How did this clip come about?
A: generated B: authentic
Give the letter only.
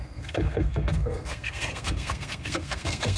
A